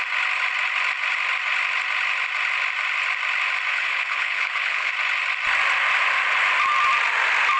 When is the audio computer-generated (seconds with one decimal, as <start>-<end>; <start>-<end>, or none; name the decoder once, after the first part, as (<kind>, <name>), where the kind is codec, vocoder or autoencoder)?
3.7-4.9 (codec, HILCodec)